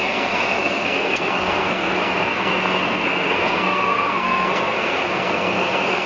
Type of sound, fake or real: fake